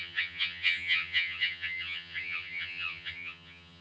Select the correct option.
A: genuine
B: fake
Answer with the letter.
B